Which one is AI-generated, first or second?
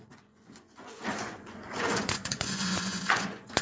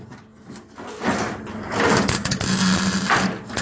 first